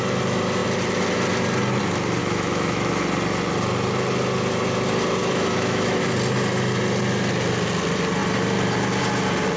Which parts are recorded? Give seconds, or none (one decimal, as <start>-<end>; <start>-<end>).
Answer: 0.0-2.2; 2.9-5.2; 6.0-9.6